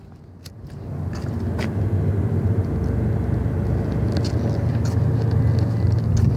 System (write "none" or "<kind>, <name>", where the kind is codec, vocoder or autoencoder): none